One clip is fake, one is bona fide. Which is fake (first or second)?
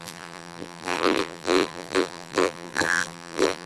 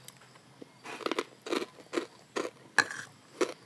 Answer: first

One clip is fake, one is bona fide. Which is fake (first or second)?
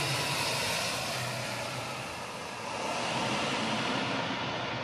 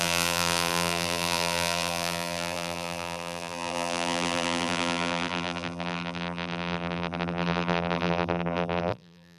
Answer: second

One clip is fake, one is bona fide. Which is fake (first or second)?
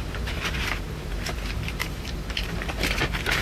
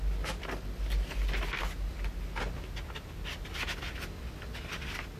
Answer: first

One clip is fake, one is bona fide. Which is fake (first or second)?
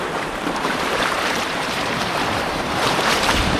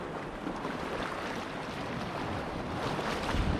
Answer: first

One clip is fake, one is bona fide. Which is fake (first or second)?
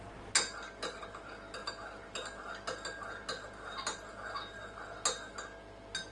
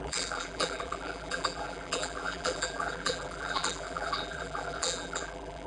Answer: second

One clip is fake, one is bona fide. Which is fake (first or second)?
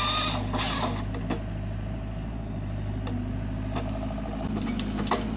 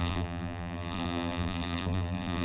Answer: second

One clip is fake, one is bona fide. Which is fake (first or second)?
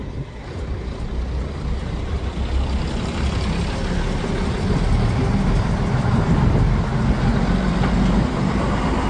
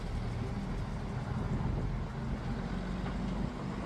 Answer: first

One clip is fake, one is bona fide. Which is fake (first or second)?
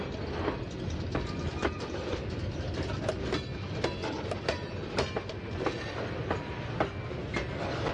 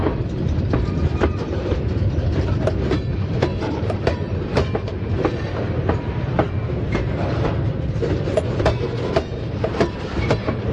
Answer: second